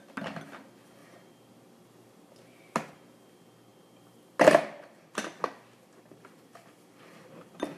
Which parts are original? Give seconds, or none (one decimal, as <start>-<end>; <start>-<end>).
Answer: 0.0-6.5

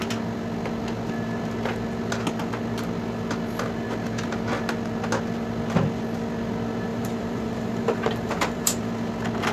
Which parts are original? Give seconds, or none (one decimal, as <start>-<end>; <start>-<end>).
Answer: 0.0-6.9; 8.9-9.5

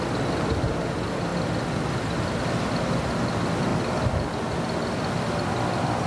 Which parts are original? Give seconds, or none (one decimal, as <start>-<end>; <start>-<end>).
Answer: 0.0-3.7; 4.3-6.1

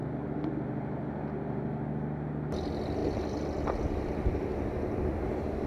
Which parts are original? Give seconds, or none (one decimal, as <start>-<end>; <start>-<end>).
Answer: 0.0-5.7

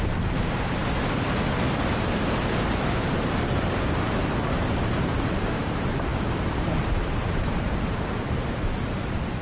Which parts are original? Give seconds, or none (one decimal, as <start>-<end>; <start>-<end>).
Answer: 0.8-2.4

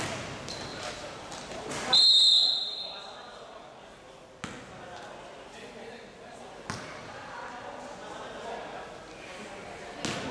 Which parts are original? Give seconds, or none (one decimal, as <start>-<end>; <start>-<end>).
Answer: 0.0-0.7; 1.7-10.3

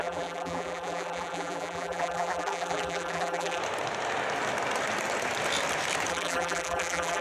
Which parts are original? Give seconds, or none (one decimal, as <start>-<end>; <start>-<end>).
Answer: 3.6-6.1